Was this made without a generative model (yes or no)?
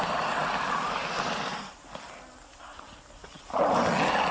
yes